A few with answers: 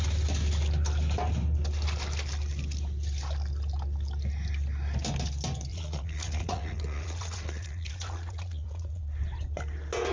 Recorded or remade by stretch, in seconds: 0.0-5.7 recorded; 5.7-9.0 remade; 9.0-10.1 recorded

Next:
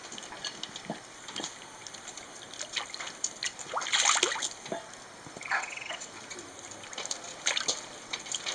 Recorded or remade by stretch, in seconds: 0.0-5.5 recorded; 5.5-6.1 remade; 6.1-8.5 recorded

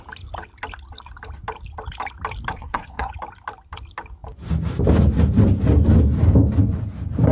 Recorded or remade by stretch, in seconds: 0.0-2.5 recorded; 2.5-3.1 remade; 3.1-7.3 recorded